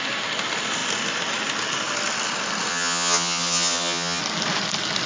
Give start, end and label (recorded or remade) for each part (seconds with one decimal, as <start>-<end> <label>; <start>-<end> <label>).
0.0-2.7 recorded; 2.7-4.2 remade; 4.2-5.1 recorded